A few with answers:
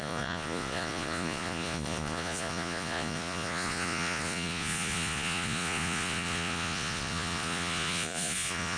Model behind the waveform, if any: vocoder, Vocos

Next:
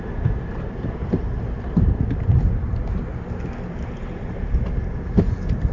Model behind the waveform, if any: none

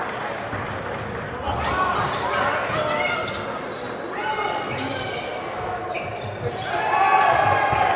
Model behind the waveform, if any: none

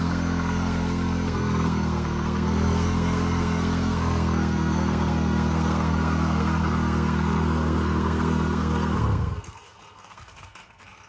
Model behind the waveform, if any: codec, SNAC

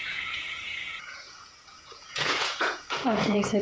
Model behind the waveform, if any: vocoder, Vocos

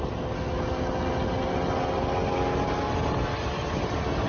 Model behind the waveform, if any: none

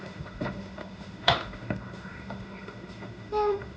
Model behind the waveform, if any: autoencoder, DAC-VAE